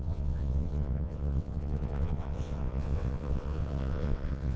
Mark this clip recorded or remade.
remade